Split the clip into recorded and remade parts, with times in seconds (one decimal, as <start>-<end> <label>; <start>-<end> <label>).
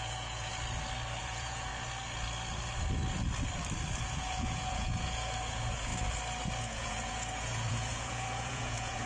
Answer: 0.0-0.5 remade; 0.5-1.2 recorded; 1.2-1.7 remade; 1.7-4.0 recorded; 4.0-5.9 remade; 5.9-6.6 recorded; 6.6-9.1 remade